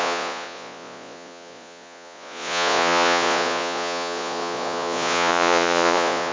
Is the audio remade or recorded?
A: remade